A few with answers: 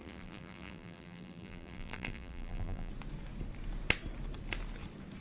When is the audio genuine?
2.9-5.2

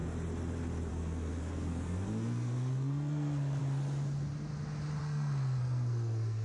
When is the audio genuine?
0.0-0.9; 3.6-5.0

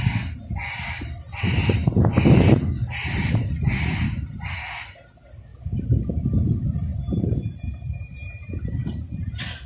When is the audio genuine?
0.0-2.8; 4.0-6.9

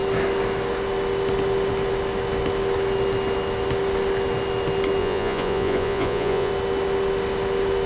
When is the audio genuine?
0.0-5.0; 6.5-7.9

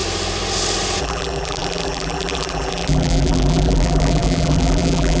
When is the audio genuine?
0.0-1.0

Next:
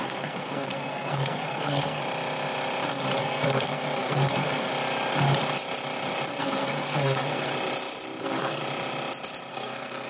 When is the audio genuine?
2.0-3.2; 4.7-6.4; 7.5-8.2; 8.6-9.5